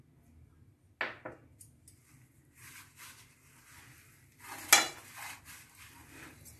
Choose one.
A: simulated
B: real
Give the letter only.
B